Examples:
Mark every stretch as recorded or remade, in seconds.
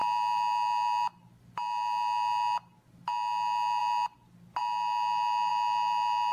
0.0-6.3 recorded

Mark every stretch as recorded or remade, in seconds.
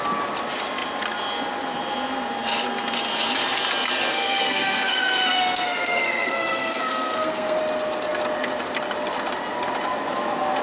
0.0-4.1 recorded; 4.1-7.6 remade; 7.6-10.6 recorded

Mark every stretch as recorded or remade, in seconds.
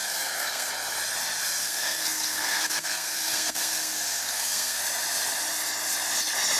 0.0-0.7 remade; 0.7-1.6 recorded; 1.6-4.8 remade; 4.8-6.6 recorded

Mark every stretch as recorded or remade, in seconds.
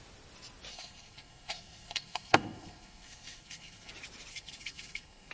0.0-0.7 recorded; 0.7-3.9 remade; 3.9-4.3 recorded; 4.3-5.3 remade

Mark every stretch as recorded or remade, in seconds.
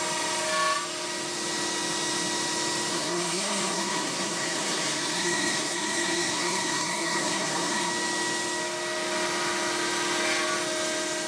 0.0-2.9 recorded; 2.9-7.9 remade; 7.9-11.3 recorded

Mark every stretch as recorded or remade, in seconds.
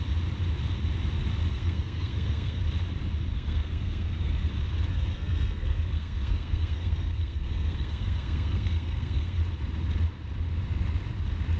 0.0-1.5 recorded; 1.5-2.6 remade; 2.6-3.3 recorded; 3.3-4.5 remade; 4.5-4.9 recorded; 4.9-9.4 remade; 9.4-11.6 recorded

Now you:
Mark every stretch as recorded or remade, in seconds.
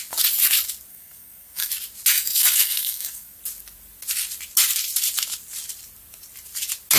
0.0-0.9 recorded; 0.9-1.7 remade; 1.7-2.1 recorded; 2.1-3.4 remade; 3.4-7.0 recorded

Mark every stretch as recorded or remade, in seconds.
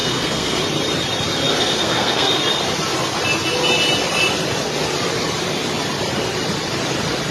0.0-0.6 remade; 0.6-1.5 recorded; 1.5-2.4 remade; 2.4-7.3 recorded